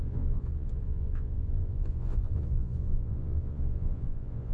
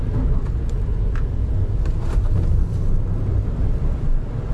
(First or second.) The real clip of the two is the second